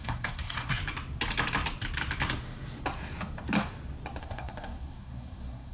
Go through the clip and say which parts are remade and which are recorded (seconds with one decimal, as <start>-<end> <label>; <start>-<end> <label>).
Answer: 0.0-0.8 remade; 0.8-4.2 recorded; 4.2-5.7 remade